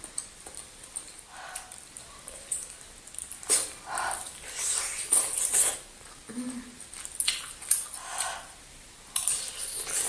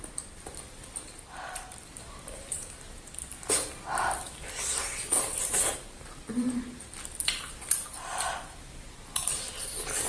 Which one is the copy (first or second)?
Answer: second